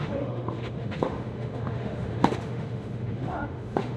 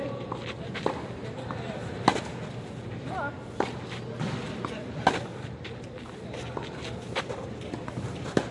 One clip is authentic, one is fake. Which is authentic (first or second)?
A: second